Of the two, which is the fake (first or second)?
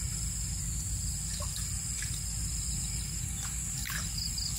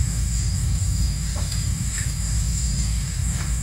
second